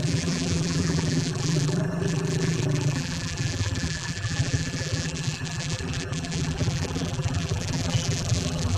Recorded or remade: remade